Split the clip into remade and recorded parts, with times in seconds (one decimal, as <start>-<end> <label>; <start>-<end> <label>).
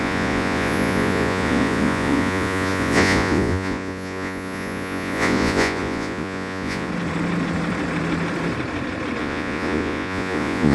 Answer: 0.0-6.9 remade; 6.9-9.2 recorded; 9.2-10.7 remade